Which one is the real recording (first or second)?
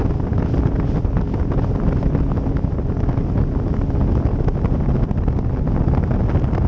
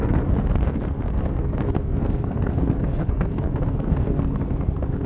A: first